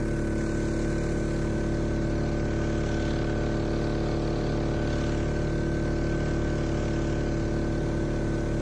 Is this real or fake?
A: real